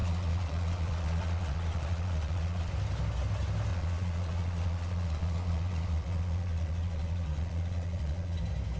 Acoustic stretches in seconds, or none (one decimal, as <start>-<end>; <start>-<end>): 2.7-3.7; 8.4-8.8